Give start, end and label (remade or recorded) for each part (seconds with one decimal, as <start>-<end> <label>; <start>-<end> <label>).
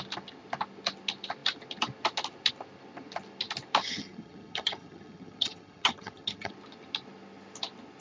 0.0-3.8 recorded; 3.8-6.5 remade; 6.5-8.0 recorded